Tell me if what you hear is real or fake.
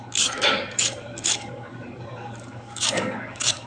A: fake